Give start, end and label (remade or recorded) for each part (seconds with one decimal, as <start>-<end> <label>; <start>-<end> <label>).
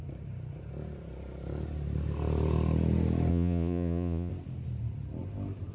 0.0-3.3 recorded; 3.3-4.3 remade; 4.3-5.7 recorded